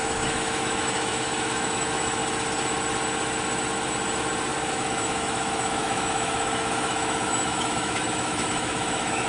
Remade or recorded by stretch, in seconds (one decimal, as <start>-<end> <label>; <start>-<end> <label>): 0.0-2.2 remade; 2.2-4.7 recorded; 4.7-9.3 remade